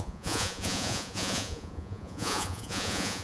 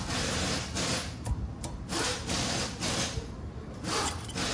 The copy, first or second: first